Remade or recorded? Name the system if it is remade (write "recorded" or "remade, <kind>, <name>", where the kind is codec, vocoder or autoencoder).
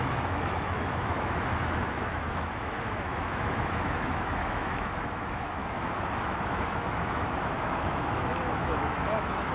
remade, autoencoder, DAC-VAE